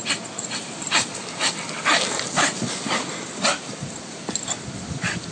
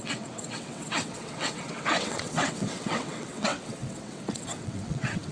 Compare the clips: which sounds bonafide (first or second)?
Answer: first